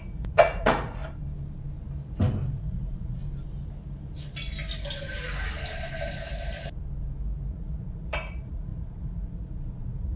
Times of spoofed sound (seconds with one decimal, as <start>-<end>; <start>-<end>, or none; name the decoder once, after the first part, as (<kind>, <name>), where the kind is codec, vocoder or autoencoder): 0.0-1.0 (vocoder, Vocos); 2.6-3.2; 7.5-10.2